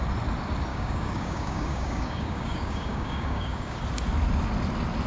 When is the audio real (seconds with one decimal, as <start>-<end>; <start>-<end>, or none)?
0.0-0.7; 3.8-5.1